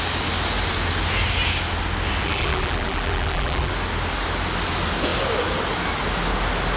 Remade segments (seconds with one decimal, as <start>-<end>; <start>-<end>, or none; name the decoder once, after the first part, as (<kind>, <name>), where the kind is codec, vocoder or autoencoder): 2.2-3.7 (vocoder, BigVGAN v2)

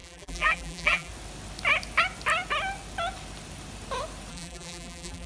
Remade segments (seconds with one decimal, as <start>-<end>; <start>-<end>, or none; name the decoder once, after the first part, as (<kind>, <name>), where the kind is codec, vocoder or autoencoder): 0.0-1.1 (vocoder, BigVGAN v2); 4.3-5.3

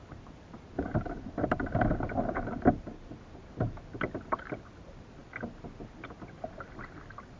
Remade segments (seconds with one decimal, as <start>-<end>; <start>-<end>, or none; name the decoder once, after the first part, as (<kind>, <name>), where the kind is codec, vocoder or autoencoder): 0.0-5.2 (vocoder, BigVGAN v2); 6.1-7.4

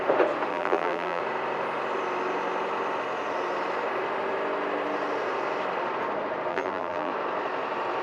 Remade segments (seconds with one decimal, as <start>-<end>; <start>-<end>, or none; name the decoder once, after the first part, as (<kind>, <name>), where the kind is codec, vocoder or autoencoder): 0.5-1.2 (vocoder, BigVGAN v2); 6.5-7.1

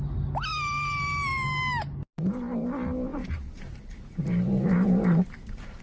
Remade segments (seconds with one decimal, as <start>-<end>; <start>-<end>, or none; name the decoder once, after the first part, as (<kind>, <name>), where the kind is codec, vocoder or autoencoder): 3.1-5.8 (vocoder, BigVGAN v2)

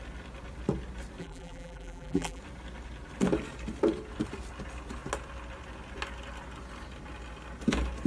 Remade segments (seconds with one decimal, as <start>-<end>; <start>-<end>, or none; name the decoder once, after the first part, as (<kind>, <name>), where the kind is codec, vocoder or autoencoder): 1.2-2.4 (vocoder, BigVGAN v2)

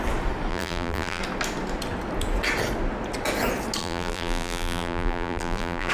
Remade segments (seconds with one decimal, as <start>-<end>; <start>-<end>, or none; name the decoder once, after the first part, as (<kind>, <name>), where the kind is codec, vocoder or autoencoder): 0.5-1.2 (vocoder, BigVGAN v2); 3.8-5.9

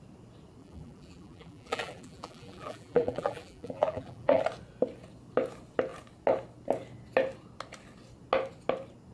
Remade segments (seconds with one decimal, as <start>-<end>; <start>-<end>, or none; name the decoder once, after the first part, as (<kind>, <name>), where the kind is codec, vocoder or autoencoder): 0.6-4.4 (vocoder, BigVGAN v2)